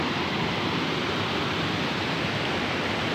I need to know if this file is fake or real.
real